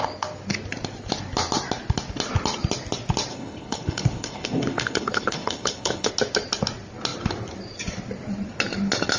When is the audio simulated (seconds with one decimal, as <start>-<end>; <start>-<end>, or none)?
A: 3.3-6.1